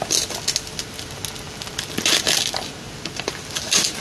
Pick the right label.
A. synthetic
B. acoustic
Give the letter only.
B